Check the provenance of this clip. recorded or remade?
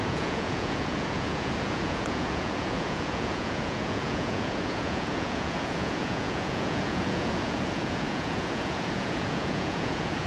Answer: remade